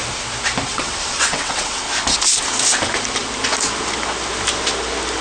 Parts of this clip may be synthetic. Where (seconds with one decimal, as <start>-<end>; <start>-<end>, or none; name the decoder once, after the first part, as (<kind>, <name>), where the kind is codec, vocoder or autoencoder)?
0.7-1.8 (vocoder, WaveNeXt)